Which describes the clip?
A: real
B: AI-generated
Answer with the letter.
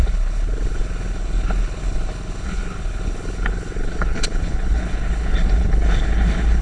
B